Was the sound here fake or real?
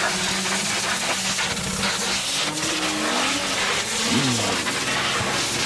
real